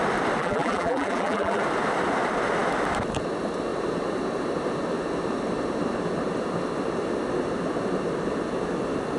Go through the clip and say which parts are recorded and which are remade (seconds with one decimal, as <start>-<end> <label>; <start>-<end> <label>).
0.0-0.4 recorded; 0.4-1.6 remade; 1.6-9.2 recorded